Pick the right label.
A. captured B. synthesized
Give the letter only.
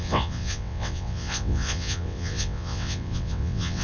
B